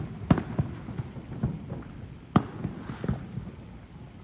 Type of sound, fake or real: real